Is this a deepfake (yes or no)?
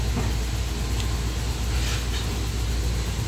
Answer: no